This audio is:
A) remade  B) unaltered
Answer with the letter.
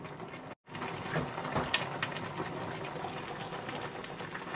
B